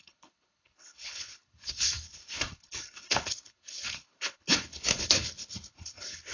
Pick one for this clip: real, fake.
fake